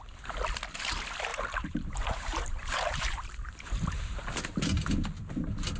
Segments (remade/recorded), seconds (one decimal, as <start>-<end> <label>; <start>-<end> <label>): 0.0-1.3 recorded; 1.3-4.6 remade; 4.6-5.8 recorded